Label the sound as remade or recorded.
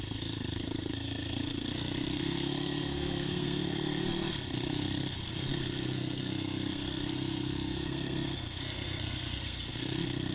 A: remade